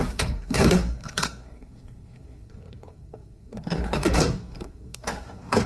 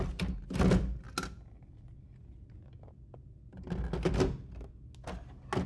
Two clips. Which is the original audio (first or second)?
second